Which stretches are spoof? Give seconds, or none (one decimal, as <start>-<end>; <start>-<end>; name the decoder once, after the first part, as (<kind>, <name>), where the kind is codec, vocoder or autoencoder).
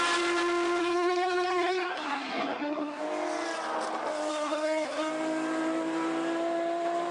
0.8-3.0 (codec, SNAC); 4.3-5.1